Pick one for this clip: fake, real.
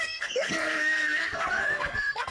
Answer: fake